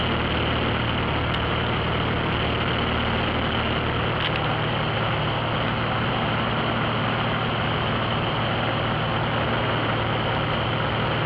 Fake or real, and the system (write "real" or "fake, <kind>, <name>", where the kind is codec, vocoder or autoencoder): real